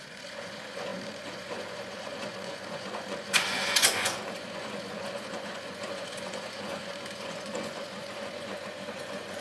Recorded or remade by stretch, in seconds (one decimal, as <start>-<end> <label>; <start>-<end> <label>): 0.0-9.4 remade